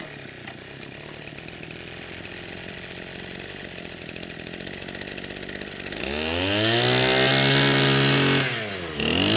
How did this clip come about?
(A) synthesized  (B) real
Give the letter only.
B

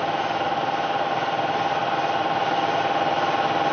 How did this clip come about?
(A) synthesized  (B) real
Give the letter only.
B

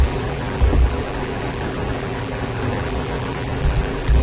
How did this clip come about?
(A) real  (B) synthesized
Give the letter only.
B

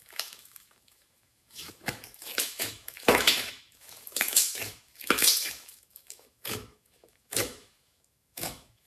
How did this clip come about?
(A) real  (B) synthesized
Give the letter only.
B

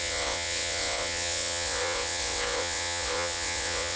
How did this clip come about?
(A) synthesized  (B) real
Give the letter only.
A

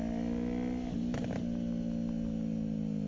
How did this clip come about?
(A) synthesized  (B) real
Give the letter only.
B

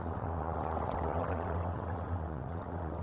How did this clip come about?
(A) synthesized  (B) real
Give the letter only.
A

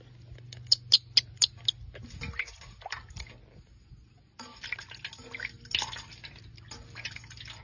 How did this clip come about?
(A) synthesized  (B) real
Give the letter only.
B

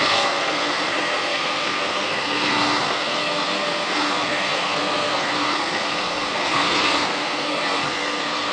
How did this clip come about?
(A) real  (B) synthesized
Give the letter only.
B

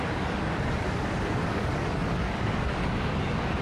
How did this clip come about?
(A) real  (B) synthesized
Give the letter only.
B